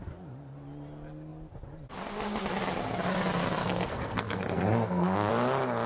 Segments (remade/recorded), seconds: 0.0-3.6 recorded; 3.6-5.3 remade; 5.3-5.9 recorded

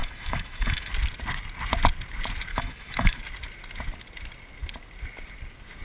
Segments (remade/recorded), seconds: 0.0-0.9 remade; 0.9-2.5 recorded; 2.5-3.2 remade; 3.2-5.8 recorded

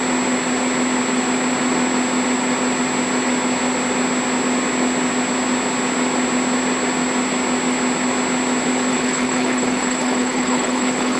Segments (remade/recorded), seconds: 0.0-8.9 recorded; 8.9-11.2 remade

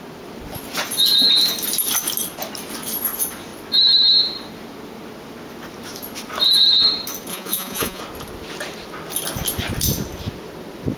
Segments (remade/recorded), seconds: 0.0-7.3 recorded; 7.3-8.0 remade; 8.0-11.0 recorded

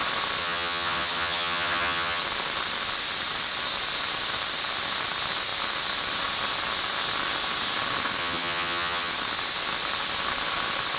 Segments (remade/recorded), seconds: 0.0-0.4 recorded; 0.4-2.2 remade; 2.2-8.2 recorded; 8.2-9.1 remade; 9.1-11.0 recorded

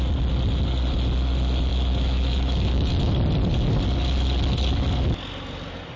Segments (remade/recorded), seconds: 0.0-1.7 recorded; 1.7-3.1 remade; 3.1-6.0 recorded

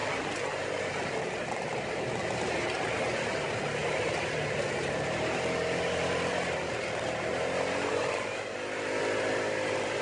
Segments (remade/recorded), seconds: 0.0-10.0 recorded